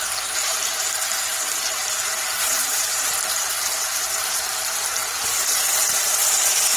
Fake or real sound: fake